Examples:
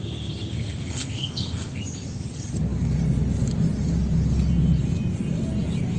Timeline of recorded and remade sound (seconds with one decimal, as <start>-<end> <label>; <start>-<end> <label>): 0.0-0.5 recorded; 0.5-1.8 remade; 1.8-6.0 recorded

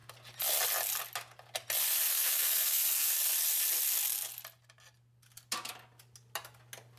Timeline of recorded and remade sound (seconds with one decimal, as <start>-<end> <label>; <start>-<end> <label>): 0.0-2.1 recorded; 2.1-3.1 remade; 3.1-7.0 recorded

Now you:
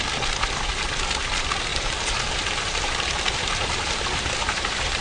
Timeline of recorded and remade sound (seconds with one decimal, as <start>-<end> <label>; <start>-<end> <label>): 0.0-1.7 recorded; 1.7-5.0 remade

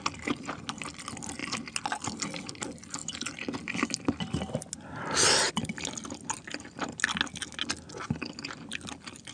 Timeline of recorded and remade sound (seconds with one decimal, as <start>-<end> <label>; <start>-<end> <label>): 0.0-9.3 recorded

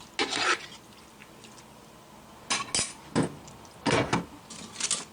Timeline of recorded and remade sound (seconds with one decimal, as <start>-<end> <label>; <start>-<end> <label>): 0.0-5.1 recorded

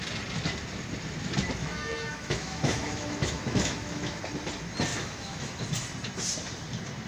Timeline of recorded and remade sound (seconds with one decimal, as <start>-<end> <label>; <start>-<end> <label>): 0.0-1.6 recorded; 1.6-4.2 remade; 4.2-4.9 recorded; 4.9-5.6 remade; 5.6-7.1 recorded